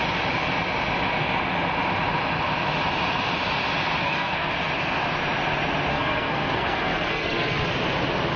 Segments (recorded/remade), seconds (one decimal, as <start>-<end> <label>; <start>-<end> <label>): 0.0-4.0 recorded; 4.0-4.5 remade; 4.5-5.9 recorded; 5.9-7.7 remade; 7.7-8.4 recorded